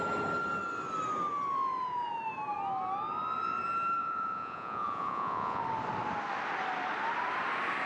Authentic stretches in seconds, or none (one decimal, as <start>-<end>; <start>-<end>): 0.0-4.0; 5.6-7.9